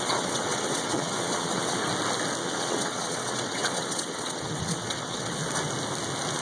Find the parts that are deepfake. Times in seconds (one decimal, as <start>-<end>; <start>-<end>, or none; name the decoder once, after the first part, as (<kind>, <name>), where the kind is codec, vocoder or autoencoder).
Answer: 0.0-1.8 (vocoder, WaveNeXt); 2.4-5.4